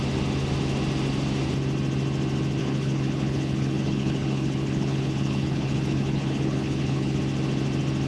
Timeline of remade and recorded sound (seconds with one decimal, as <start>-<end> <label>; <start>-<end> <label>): 0.0-2.6 recorded; 2.6-7.2 remade; 7.2-8.1 recorded